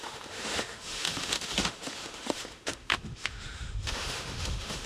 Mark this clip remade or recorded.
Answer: remade